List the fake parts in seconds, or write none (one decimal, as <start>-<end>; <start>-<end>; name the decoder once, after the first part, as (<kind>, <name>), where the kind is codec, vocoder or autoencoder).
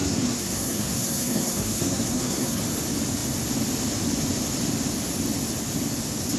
0.0-2.6 (codec, SNAC)